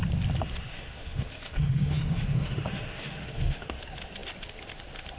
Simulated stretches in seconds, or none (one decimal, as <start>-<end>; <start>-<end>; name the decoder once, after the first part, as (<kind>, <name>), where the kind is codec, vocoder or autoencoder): 0.7-3.8 (autoencoder, DAC-VAE)